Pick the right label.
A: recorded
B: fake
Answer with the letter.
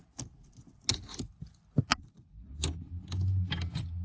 A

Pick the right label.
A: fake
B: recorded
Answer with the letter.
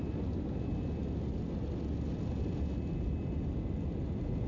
B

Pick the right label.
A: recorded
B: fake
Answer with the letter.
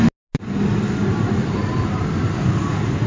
A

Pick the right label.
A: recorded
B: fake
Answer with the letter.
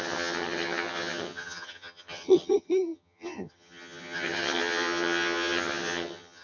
B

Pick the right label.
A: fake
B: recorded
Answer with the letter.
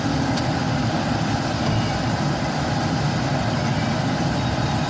B